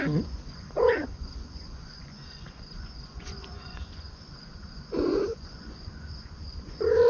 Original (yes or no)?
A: no